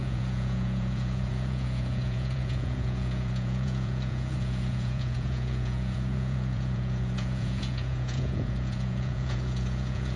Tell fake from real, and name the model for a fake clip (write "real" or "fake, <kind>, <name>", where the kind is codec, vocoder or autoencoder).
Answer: fake, vocoder, Vocos